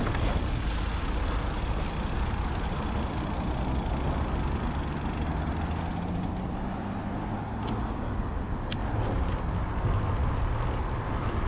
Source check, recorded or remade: recorded